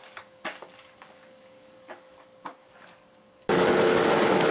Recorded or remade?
remade